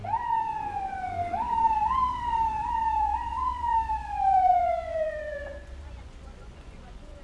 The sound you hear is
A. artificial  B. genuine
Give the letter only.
A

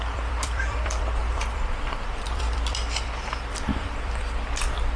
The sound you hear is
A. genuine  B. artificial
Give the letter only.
B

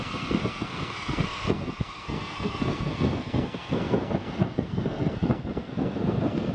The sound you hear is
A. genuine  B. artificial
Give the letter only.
B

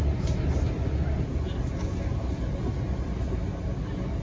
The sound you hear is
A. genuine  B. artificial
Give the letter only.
A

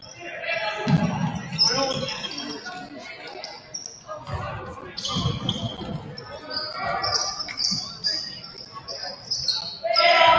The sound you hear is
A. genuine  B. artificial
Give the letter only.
A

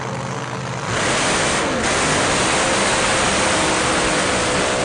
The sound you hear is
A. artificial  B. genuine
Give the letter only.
B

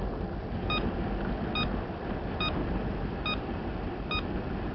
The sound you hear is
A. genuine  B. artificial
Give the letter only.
A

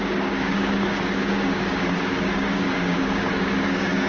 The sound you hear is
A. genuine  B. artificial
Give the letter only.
B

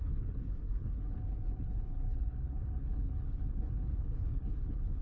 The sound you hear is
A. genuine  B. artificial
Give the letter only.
B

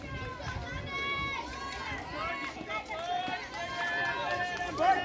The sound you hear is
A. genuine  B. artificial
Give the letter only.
A